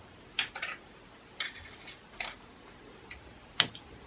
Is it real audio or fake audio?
real